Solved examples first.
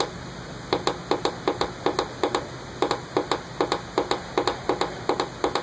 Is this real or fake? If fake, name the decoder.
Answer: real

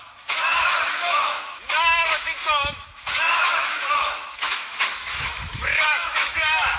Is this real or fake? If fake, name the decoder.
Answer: fake, autoencoder, DAC-VAE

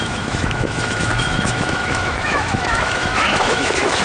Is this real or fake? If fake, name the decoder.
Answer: fake, autoencoder, DAC-VAE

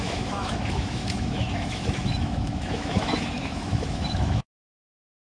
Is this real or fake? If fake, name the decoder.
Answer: fake, autoencoder, DAC-VAE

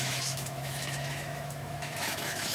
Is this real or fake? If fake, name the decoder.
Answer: fake, autoencoder, DAC-VAE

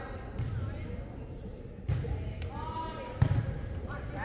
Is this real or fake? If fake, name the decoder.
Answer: real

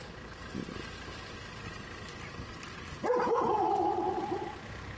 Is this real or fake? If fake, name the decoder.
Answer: real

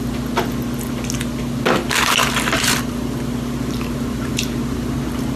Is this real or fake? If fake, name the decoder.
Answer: real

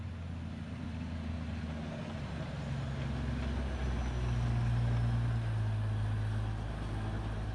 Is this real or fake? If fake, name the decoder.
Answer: real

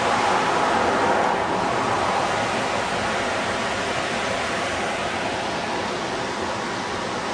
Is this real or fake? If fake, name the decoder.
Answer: real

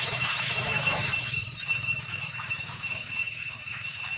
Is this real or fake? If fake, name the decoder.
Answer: fake, autoencoder, DAC-VAE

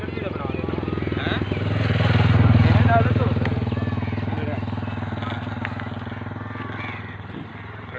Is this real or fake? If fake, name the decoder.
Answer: real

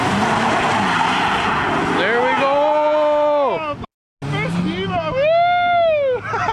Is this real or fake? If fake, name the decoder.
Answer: real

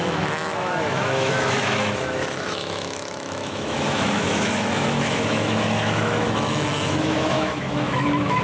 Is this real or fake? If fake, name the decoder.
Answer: fake, autoencoder, DAC-VAE